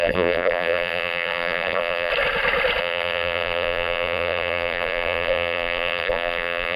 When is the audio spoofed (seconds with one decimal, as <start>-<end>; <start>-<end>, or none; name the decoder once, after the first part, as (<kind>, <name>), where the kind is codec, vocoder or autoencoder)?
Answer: 0.0-2.1 (vocoder, BigVGAN v2); 2.8-6.8